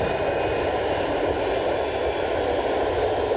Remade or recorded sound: recorded